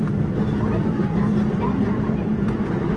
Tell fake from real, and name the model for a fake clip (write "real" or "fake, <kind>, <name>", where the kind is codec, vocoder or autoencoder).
real